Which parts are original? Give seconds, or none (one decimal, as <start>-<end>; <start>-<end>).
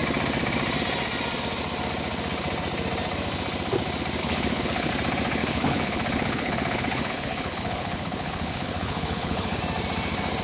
0.0-4.2; 4.9-5.4; 9.6-10.4